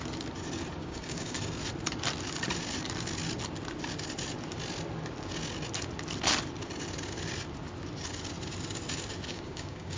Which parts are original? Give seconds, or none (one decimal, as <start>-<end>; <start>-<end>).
0.0-0.8; 1.4-9.3